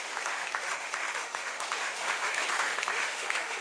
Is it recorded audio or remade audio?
remade